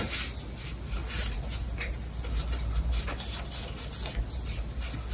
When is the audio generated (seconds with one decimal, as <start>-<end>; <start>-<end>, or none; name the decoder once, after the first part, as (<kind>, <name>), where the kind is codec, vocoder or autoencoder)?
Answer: none